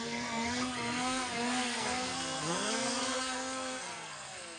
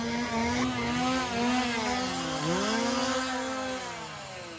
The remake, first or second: first